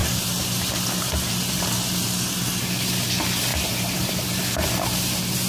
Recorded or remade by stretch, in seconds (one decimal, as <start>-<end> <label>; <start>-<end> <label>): 0.0-1.5 remade; 1.5-3.5 recorded; 3.5-4.2 remade; 4.2-5.5 recorded